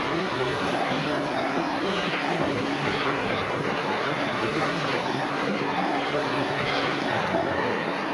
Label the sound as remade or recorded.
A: remade